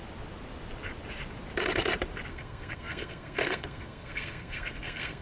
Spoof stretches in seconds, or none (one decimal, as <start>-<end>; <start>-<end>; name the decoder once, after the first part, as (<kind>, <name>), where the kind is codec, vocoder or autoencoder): 2.3-5.2 (codec, SNAC)